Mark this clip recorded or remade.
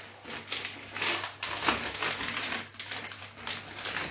recorded